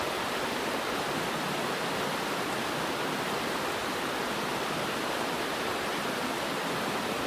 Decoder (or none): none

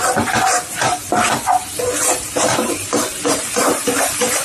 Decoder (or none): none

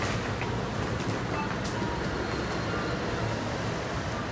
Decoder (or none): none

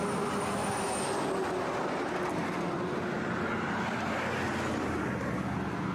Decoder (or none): none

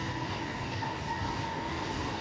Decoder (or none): codec, DAC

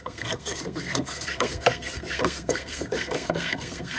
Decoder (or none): codec, SNAC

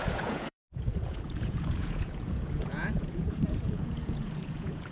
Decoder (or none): vocoder, Vocos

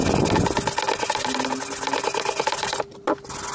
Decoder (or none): none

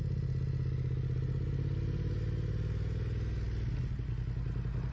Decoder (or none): none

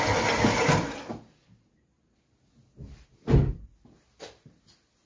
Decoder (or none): none